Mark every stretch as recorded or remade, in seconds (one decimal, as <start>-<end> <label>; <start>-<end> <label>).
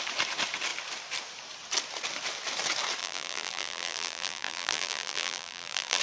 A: 0.0-3.0 recorded; 3.0-6.0 remade